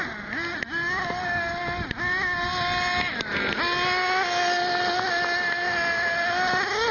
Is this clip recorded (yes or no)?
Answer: yes